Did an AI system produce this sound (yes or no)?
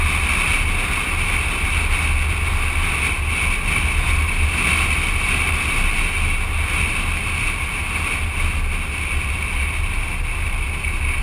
no